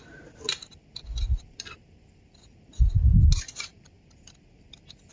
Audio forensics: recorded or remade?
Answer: recorded